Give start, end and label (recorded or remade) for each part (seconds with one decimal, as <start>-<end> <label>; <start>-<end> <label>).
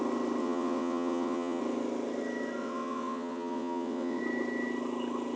0.0-0.4 recorded; 0.4-1.6 remade; 1.6-2.6 recorded; 2.6-4.2 remade; 4.2-5.4 recorded